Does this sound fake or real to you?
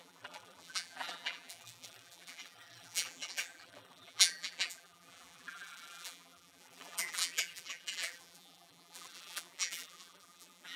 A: fake